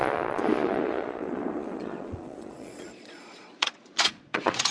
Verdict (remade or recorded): remade